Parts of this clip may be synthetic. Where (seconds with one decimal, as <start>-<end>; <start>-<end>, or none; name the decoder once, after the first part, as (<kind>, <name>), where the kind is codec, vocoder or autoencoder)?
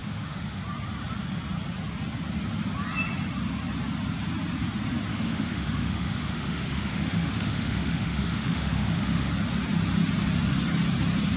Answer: 0.0-0.6 (autoencoder, DAC-VAE); 5.1-9.3